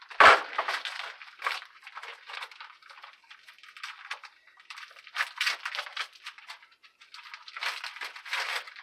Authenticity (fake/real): fake